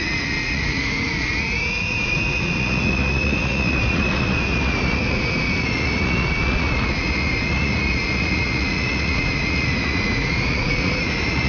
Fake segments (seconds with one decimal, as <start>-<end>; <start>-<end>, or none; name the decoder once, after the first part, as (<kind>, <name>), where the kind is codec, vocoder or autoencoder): 0.0-11.5 (vocoder, Vocos)